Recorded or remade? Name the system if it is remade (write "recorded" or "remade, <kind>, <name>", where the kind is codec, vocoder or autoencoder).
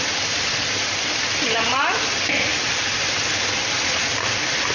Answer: recorded